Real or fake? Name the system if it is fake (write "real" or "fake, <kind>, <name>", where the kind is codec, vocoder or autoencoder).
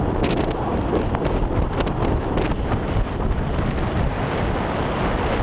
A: real